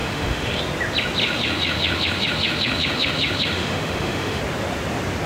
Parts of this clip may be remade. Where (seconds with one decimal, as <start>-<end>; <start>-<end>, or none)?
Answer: 0.0-0.6; 1.2-4.4